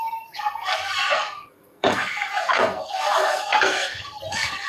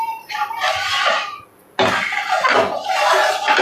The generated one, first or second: first